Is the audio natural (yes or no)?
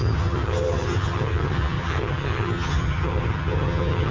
no